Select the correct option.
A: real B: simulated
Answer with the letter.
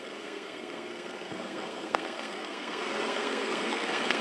B